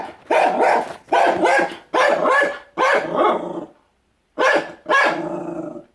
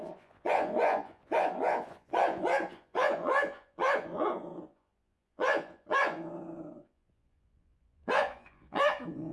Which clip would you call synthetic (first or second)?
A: second